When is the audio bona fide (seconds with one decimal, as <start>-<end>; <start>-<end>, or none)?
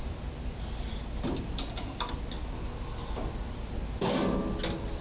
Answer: 0.0-5.0